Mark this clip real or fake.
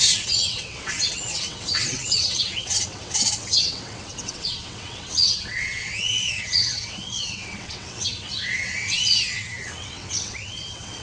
fake